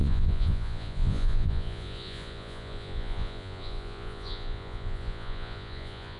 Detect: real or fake fake